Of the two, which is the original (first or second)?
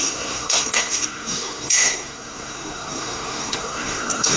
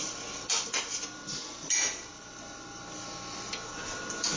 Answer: second